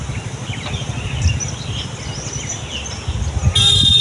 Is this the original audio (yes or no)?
yes